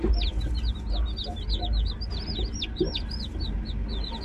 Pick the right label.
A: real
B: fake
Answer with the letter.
A